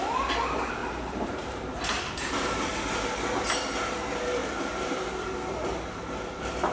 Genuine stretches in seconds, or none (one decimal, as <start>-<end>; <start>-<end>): 0.0-0.8; 2.7-4.4; 5.1-6.7